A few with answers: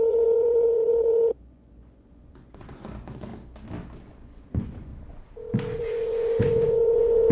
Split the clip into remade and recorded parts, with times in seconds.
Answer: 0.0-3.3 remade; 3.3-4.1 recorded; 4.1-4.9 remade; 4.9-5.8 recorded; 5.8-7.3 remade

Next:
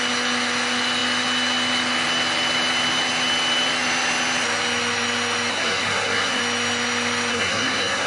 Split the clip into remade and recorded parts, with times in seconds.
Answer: 0.0-5.5 recorded; 5.5-6.4 remade; 6.4-7.3 recorded; 7.3-8.1 remade